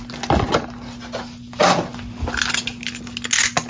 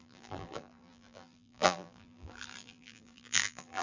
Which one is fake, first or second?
second